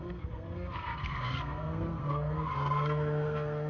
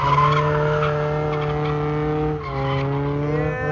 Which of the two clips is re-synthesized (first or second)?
first